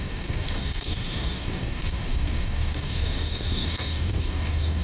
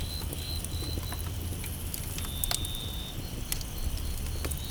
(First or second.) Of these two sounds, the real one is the second